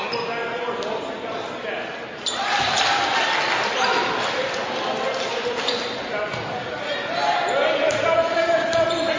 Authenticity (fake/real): real